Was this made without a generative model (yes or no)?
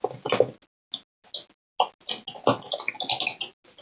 yes